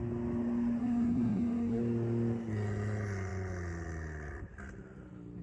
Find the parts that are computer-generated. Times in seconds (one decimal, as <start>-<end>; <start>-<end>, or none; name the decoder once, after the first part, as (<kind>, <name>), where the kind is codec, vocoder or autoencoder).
0.8-1.8 (codec, SNAC)